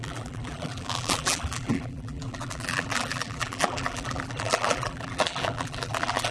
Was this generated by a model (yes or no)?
yes